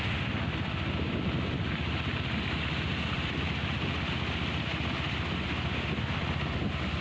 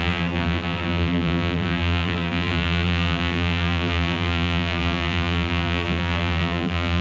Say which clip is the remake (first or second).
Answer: second